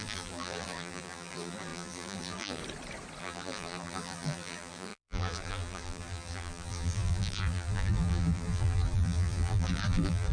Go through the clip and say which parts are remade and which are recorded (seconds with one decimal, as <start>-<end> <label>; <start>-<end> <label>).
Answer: 0.0-2.6 remade; 2.6-3.2 recorded; 3.2-10.3 remade